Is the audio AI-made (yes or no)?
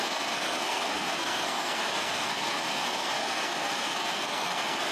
yes